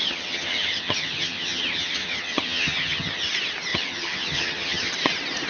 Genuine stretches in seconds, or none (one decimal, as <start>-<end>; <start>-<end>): 3.3-3.7; 4.9-5.5